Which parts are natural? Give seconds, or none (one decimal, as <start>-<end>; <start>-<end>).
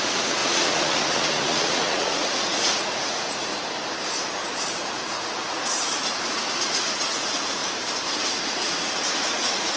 3.5-4.8; 7.6-8.2